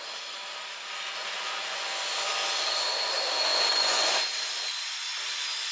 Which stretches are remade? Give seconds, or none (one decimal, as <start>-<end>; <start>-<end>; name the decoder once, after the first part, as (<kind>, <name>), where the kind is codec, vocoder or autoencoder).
1.2-2.0 (vocoder, Vocos); 3.5-4.1